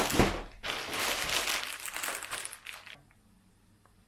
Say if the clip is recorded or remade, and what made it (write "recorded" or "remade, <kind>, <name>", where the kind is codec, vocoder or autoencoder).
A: recorded